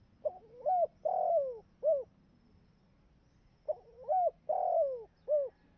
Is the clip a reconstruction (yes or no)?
no